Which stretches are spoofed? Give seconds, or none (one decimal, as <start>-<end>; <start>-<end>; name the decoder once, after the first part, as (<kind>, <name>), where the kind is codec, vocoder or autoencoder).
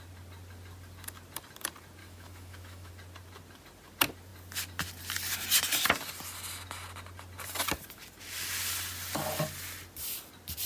2.0-2.9 (autoencoder, DAC-VAE)